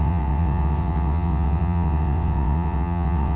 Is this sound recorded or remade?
remade